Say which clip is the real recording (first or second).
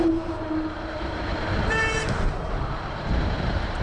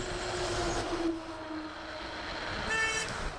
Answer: second